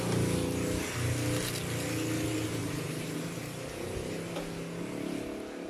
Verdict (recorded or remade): recorded